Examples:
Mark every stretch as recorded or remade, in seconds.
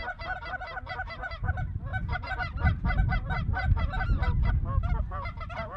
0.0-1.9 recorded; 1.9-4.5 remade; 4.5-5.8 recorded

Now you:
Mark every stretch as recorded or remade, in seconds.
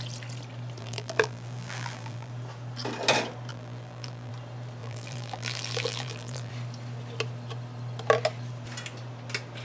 0.0-0.8 recorded; 0.8-2.3 remade; 2.3-3.5 recorded; 3.5-4.3 remade; 4.3-4.8 recorded; 4.8-6.5 remade; 6.5-9.6 recorded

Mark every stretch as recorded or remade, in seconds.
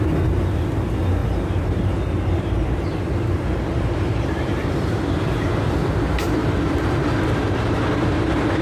0.0-1.2 recorded; 1.2-2.8 remade; 2.8-3.7 recorded; 3.7-4.5 remade; 4.5-6.4 recorded; 6.4-8.6 remade